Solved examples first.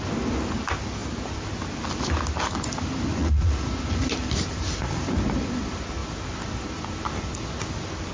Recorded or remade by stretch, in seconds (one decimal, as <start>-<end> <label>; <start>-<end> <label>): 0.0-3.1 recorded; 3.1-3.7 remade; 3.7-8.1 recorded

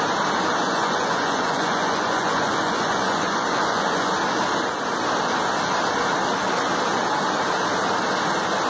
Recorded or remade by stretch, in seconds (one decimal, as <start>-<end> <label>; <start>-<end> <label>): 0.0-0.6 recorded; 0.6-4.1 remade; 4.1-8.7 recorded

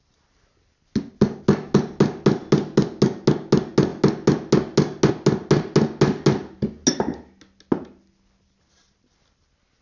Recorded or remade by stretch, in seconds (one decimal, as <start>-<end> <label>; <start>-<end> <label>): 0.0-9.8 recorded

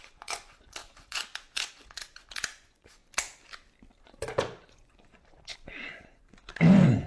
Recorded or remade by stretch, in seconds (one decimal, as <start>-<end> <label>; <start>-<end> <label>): 0.0-3.0 remade; 3.0-4.0 recorded; 4.0-7.1 remade